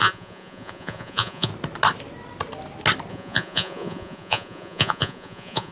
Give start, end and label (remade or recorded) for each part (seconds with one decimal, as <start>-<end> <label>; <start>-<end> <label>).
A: 0.0-1.5 remade; 1.5-3.1 recorded; 3.1-5.7 remade